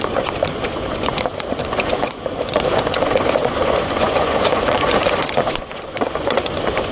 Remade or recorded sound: remade